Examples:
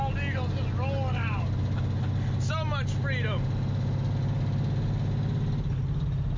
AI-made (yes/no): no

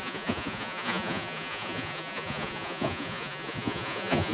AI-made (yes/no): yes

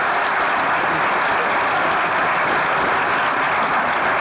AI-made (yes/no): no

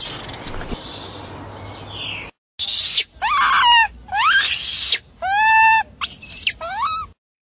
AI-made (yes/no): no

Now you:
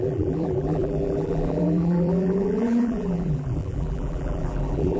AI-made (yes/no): yes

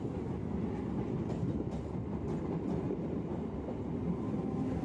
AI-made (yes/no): no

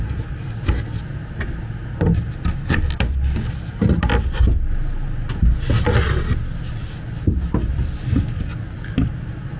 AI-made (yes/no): no